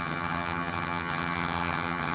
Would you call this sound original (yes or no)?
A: no